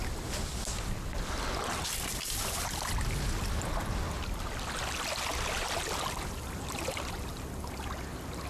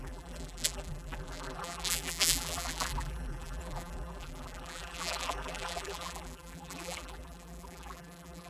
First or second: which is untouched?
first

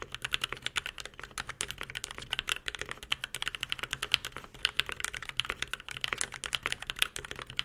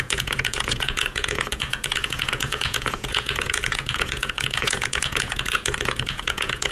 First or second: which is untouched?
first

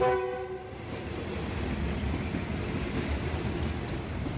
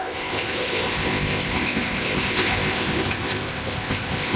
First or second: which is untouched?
first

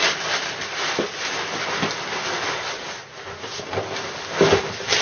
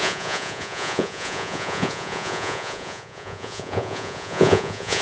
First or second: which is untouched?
first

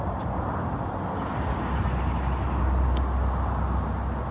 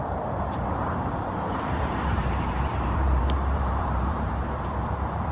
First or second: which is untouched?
first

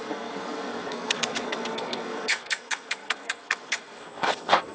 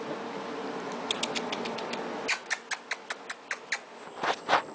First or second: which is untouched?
second